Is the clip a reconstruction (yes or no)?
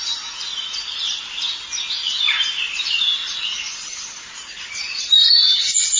no